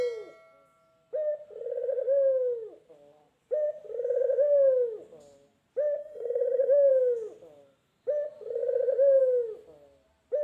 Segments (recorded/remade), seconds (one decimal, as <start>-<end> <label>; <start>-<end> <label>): 0.0-6.0 recorded; 6.0-6.9 remade; 6.9-10.4 recorded